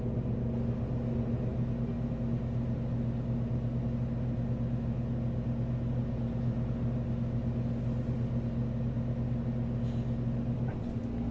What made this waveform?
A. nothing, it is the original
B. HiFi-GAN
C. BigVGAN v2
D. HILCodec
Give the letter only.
A